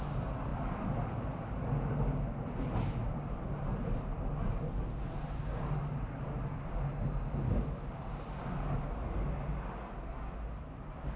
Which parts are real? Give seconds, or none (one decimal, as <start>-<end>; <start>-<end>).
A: 0.0-11.2